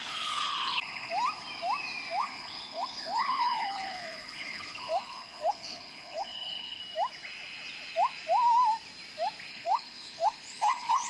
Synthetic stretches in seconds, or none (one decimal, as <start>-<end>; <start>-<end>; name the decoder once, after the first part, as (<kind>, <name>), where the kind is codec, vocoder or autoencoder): 0.0-1.1 (codec, HILCodec); 2.2-6.8; 9.5-11.1